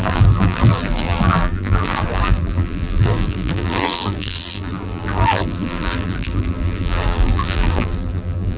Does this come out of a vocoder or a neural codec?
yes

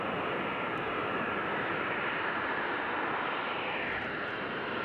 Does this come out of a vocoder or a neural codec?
no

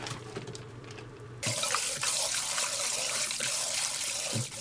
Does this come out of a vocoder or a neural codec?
yes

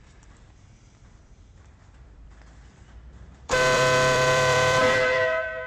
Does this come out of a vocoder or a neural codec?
yes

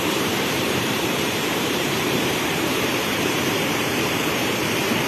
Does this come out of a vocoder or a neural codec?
yes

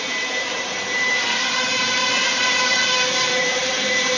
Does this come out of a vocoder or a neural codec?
yes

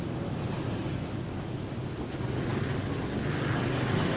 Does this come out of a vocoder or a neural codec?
no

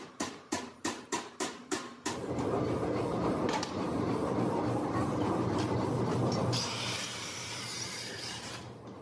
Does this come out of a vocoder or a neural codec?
yes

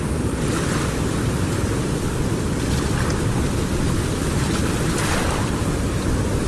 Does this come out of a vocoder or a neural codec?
no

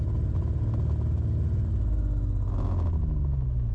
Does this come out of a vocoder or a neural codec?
no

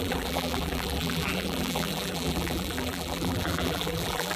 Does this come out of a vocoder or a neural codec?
yes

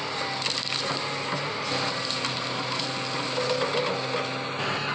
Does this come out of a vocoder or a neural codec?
no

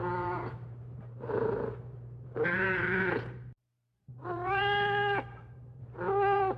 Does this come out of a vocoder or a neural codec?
yes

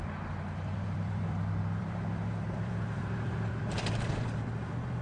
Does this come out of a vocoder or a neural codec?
yes